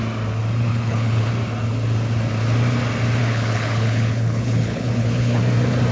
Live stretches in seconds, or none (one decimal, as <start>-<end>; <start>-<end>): 0.0-0.7; 1.3-3.2; 5.4-5.9